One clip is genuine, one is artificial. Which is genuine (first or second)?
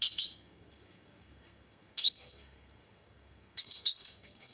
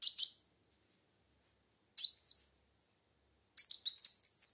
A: second